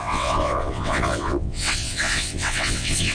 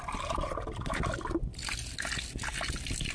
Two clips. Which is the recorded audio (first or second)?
second